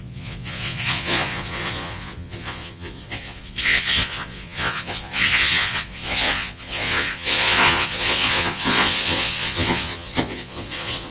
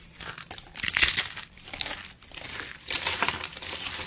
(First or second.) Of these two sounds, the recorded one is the second